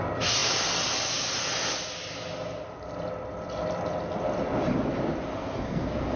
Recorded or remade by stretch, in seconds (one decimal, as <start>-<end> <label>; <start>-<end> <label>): 0.0-5.3 recorded; 5.3-6.2 remade